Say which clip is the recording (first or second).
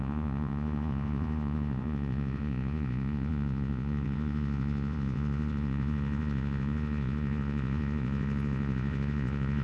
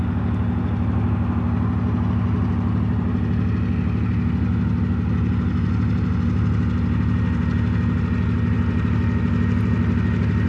second